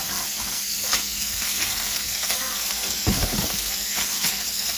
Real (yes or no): no